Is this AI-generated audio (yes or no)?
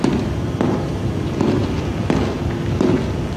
no